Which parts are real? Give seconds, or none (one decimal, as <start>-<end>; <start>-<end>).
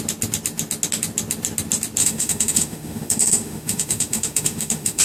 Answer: 0.0-2.0